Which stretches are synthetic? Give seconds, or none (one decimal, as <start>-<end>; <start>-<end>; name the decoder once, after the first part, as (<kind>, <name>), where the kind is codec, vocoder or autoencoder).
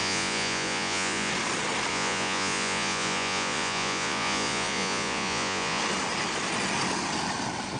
0.0-1.3 (vocoder, Vocos); 1.9-5.8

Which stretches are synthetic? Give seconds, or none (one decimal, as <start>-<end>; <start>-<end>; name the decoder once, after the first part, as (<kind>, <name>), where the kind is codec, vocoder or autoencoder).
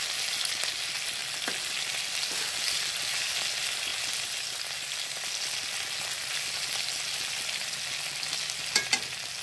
none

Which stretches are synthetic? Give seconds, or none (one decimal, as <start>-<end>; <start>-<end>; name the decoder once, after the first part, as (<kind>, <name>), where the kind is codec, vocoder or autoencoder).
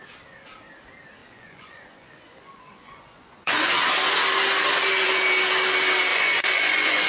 1.2-3.7 (vocoder, Vocos); 6.1-7.1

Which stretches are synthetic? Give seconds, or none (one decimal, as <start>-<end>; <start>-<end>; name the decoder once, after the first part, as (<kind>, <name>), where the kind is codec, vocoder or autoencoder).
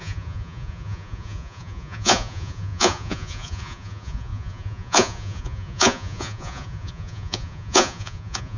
0.0-8.6 (vocoder, Vocos)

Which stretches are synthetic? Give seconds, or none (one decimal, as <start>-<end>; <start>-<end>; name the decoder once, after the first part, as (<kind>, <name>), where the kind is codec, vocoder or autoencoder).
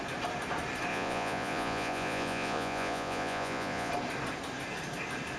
0.9-3.9 (vocoder, Vocos)